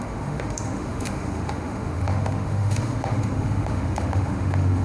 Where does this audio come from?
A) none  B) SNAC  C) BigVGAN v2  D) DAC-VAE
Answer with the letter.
D